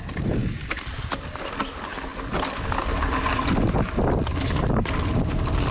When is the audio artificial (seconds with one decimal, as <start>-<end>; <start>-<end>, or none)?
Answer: none

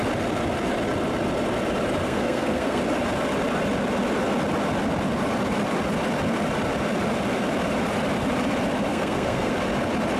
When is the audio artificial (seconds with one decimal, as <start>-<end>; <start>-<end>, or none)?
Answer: 2.0-2.8; 8.9-9.5

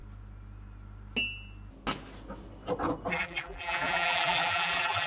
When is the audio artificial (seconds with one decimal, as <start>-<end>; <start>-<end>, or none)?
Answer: 3.1-5.1

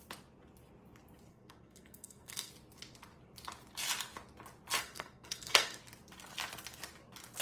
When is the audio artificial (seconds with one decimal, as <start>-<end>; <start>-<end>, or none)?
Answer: 1.3-2.5; 4.8-5.8

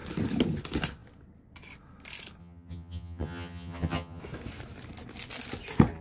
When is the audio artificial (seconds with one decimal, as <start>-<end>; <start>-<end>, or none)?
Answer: 2.4-4.2

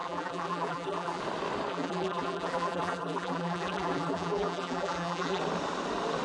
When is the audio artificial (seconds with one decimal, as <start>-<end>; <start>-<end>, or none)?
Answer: 0.0-1.2; 1.7-5.4

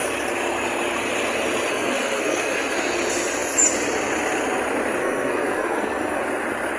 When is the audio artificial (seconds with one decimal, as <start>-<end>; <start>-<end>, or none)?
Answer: 1.7-2.9; 5.0-6.2

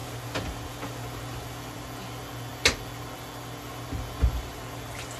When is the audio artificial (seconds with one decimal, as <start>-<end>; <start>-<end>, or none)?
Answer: none